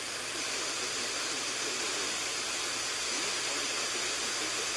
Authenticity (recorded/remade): recorded